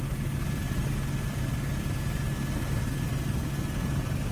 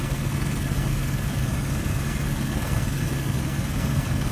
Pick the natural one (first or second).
first